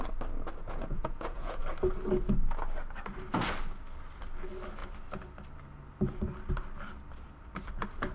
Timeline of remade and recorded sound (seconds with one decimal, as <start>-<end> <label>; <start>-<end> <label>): 0.0-0.6 recorded; 0.6-1.6 remade; 1.6-8.1 recorded